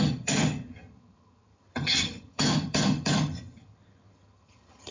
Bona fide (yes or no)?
no